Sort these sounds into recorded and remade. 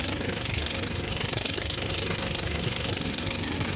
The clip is remade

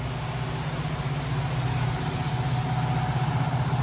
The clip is recorded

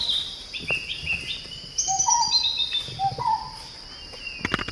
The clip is recorded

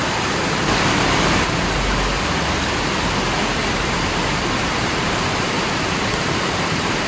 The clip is recorded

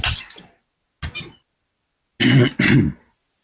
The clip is recorded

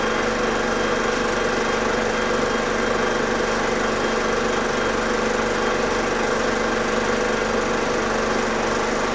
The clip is recorded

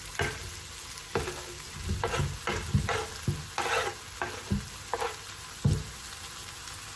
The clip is recorded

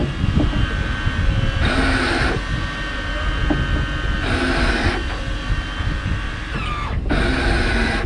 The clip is recorded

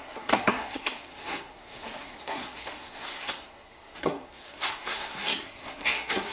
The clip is remade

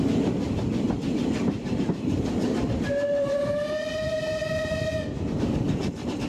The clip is recorded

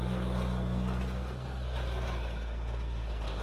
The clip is remade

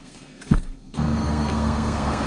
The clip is remade